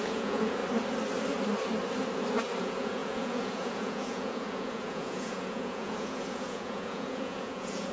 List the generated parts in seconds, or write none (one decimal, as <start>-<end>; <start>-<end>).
0.0-0.6; 2.6-7.9